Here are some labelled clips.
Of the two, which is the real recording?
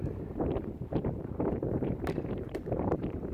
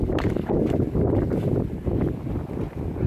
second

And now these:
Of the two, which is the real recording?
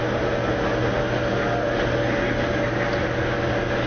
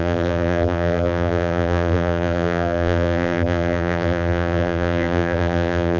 first